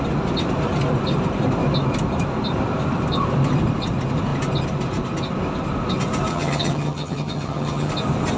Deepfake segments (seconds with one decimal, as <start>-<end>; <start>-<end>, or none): 6.3-7.9